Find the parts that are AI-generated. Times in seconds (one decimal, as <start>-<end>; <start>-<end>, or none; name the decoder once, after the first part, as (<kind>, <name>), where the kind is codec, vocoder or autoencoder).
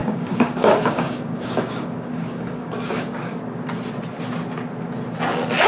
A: 0.0-3.4 (codec, DAC)